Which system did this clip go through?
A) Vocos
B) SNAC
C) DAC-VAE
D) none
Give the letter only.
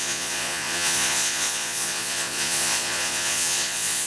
A